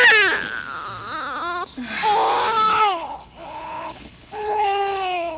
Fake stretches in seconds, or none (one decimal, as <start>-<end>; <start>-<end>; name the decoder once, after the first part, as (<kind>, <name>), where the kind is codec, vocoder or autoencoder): 2.7-5.4 (codec, HILCodec)